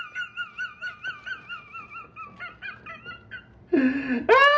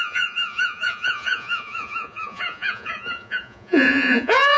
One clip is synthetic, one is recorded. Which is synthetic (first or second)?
second